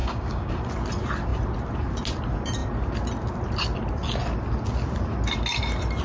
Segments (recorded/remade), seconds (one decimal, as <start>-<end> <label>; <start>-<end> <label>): 0.0-0.5 remade; 0.5-6.0 recorded